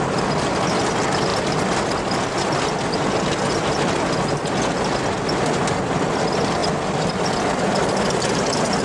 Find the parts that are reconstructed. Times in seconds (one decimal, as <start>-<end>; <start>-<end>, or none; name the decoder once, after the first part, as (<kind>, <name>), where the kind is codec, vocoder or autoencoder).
none